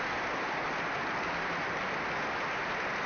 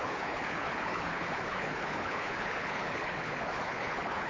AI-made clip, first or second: second